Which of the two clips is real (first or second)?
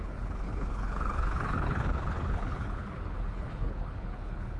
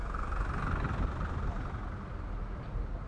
second